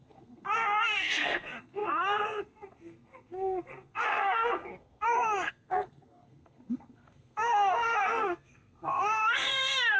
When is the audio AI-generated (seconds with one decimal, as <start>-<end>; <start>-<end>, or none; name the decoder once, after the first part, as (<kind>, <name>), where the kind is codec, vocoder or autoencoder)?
0.0-10.0 (codec, SNAC)